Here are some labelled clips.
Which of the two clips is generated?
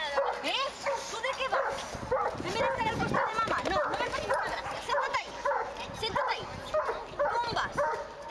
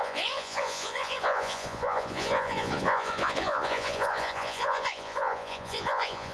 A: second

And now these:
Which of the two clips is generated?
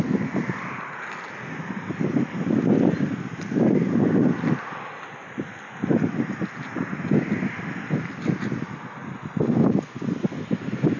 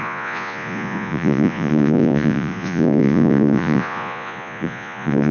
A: second